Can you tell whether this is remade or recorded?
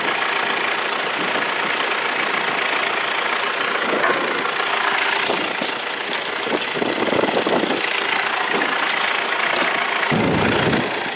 recorded